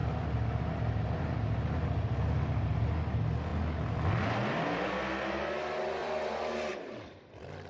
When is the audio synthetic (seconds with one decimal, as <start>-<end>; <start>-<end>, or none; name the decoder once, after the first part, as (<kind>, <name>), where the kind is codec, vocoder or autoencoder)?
6.0-7.3 (vocoder, BigVGAN v2)